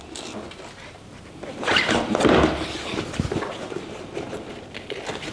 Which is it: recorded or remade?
recorded